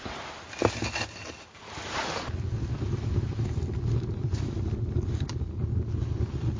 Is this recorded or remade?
recorded